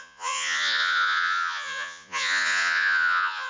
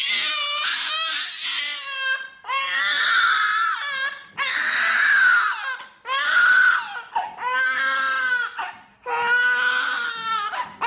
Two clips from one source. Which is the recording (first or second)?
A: second